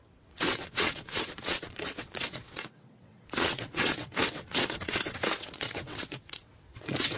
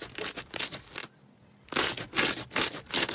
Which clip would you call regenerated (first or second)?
first